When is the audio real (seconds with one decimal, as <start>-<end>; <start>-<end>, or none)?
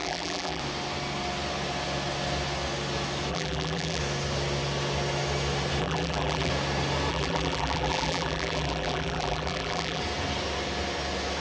0.6-3.3; 4.0-5.8; 6.5-7.1; 10.0-11.4